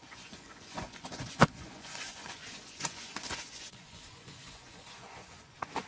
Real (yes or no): no